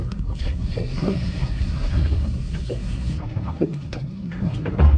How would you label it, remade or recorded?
remade